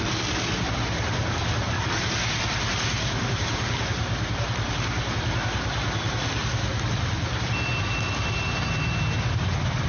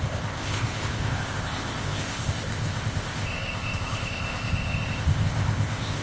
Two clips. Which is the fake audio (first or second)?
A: second